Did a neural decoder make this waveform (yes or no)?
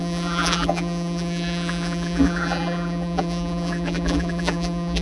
yes